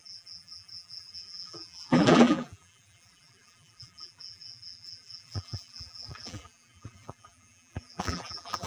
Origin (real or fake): fake